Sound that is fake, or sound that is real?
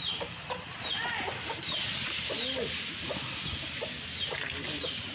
real